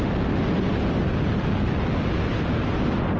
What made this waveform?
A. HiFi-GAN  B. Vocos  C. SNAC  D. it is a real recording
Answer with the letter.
D